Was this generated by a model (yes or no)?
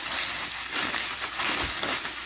no